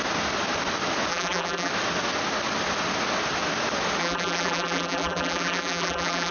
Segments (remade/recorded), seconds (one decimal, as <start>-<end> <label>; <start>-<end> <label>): 0.0-1.1 recorded; 1.1-1.7 remade; 1.7-4.0 recorded; 4.0-6.3 remade